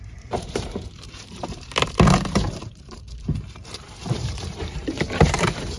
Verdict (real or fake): fake